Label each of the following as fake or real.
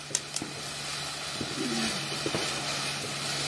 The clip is real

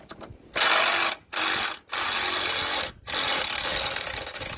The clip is real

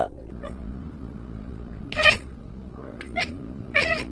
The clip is fake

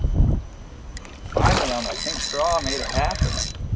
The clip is real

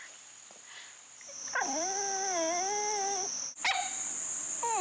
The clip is real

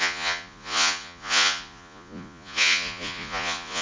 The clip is fake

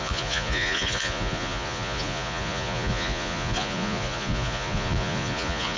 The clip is fake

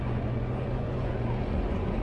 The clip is fake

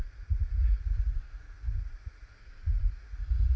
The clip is fake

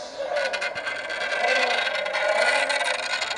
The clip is real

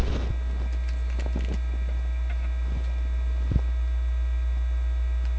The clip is real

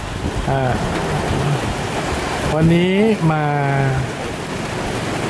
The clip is real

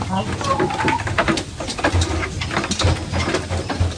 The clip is real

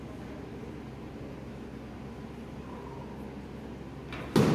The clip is real